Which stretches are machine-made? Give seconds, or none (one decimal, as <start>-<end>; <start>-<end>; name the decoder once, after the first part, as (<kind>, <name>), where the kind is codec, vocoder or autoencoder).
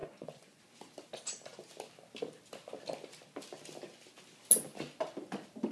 0.0-0.6 (vocoder, Vocos)